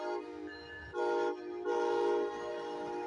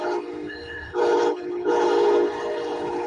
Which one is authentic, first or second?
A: first